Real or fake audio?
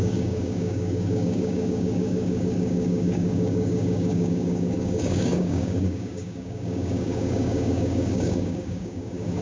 fake